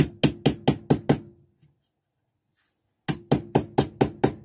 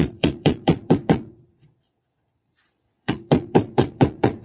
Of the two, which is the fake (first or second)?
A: second